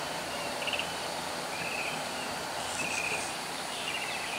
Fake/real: fake